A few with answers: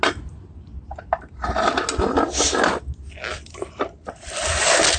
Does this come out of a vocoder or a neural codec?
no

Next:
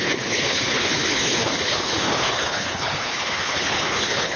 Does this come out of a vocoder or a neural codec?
yes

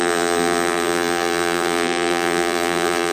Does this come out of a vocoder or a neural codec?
yes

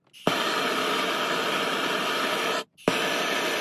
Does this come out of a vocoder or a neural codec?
no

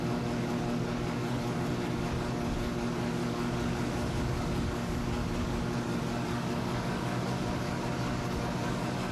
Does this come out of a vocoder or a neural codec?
yes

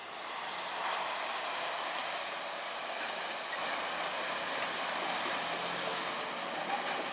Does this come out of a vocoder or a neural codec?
no